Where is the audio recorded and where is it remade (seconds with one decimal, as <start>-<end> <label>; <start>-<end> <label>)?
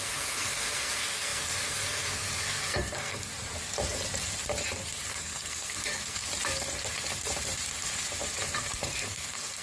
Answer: 0.0-3.3 remade; 3.3-5.1 recorded; 5.1-6.3 remade; 6.3-8.6 recorded; 8.6-9.6 remade